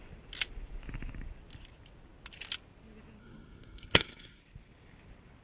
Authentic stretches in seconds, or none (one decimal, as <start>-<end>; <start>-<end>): 0.0-3.2; 4.4-5.4